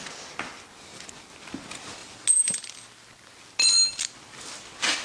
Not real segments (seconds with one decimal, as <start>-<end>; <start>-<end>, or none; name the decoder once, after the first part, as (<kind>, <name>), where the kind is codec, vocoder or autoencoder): none